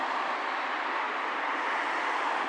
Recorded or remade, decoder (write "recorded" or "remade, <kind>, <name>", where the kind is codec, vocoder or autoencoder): recorded